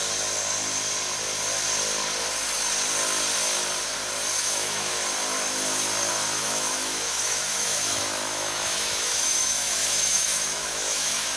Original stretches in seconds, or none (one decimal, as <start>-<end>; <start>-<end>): 0.0-4.4; 4.9-6.1